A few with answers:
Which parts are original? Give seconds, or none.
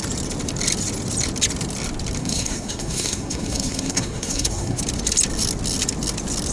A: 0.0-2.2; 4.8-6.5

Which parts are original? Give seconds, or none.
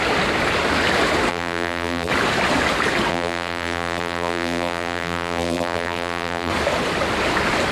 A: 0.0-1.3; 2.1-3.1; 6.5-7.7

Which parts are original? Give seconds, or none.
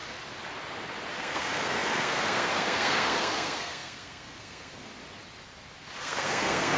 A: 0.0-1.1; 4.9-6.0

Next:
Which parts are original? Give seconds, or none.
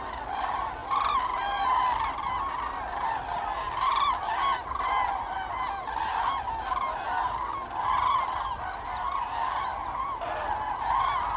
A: 0.0-11.4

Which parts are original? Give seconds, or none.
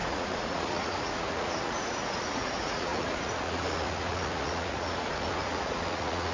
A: none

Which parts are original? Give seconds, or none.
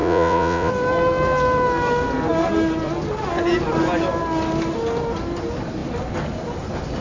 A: 0.7-7.0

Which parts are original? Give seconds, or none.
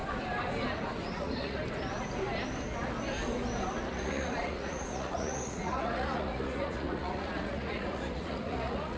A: 0.0-1.1; 1.6-3.9